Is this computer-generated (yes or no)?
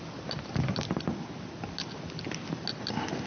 no